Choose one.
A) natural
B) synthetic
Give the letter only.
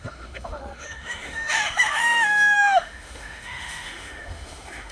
B